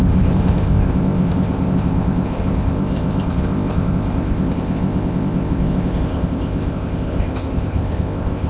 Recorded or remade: remade